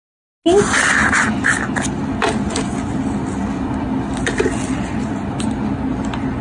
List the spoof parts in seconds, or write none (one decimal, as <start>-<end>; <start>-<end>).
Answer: none